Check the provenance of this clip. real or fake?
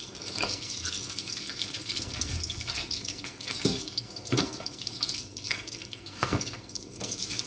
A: fake